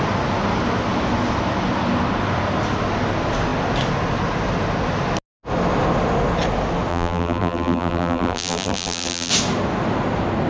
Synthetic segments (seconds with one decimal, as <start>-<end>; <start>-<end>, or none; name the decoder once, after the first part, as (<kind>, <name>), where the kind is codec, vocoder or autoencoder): 6.9-9.3 (vocoder, BigVGAN v2)